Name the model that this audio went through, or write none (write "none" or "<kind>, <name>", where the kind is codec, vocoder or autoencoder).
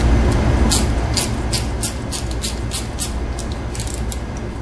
none